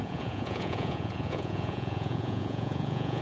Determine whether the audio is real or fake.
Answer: fake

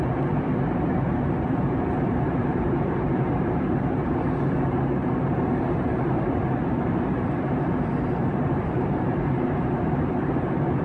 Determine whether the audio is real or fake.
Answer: fake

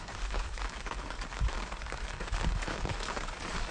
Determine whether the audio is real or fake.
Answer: fake